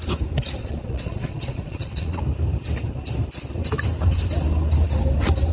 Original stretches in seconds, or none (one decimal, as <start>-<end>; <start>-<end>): 0.0-0.6; 2.2-5.5